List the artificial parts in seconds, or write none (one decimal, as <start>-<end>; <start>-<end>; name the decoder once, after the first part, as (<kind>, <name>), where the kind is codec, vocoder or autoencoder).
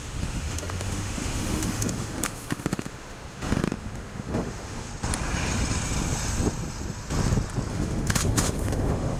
0.0-4.9 (autoencoder, DAC-VAE); 7.7-9.2